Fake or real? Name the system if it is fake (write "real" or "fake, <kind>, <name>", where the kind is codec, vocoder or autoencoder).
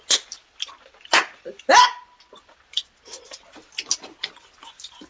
real